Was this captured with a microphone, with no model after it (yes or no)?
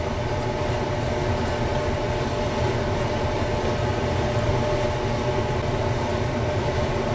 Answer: yes